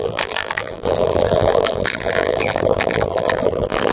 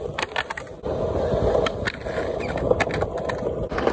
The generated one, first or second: first